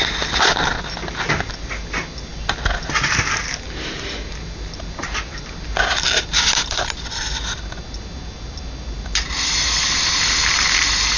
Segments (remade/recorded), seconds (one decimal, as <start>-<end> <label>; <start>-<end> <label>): 0.0-11.2 recorded